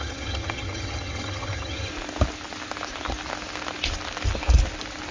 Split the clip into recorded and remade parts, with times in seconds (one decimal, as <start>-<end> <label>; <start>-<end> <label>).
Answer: 0.0-1.9 remade; 1.9-5.1 recorded